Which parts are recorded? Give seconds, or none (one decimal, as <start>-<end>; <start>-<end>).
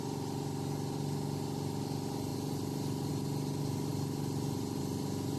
0.0-5.4